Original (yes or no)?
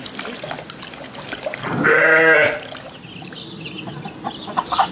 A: yes